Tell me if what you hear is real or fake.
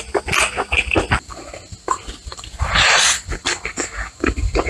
real